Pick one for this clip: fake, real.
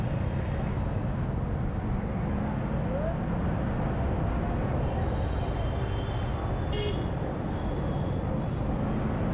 real